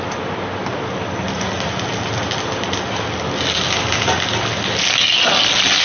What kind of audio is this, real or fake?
real